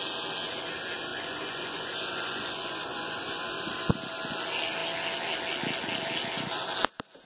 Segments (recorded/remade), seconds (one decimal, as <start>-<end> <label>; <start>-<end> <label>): 0.0-1.1 recorded; 1.1-3.4 remade; 3.4-7.3 recorded